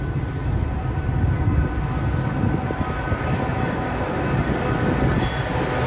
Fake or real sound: real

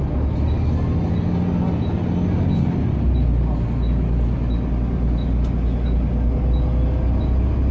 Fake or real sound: real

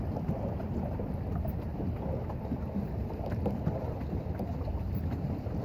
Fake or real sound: real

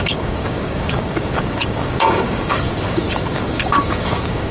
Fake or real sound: fake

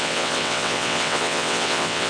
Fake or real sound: fake